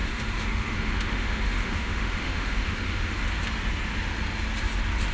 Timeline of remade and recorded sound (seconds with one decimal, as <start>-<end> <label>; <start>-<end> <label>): 0.0-3.1 remade; 3.1-5.1 recorded